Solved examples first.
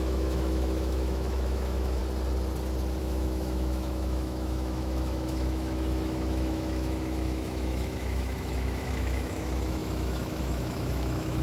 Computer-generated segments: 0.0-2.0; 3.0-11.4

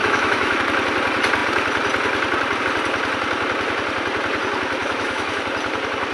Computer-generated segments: 0.0-0.6; 4.8-5.4

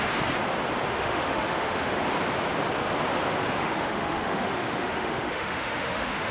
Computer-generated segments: 0.9-1.9; 3.6-6.3